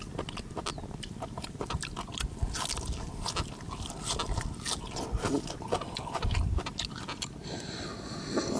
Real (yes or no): yes